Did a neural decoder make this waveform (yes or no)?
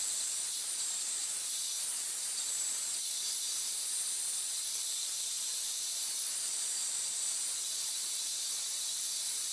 yes